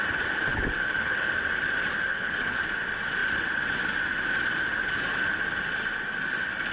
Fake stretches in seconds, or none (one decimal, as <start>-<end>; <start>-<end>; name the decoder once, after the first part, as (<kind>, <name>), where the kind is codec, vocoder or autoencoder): 0.5-1.3 (codec, HILCodec); 2.1-2.6